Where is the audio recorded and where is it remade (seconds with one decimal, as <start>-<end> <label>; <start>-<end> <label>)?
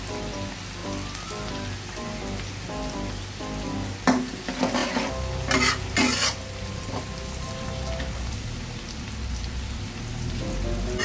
0.0-11.0 recorded